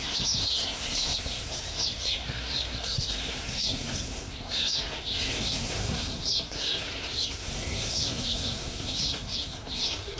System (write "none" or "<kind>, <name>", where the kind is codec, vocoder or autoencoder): codec, SNAC